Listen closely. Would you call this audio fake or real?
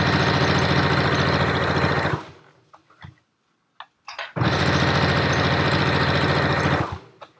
real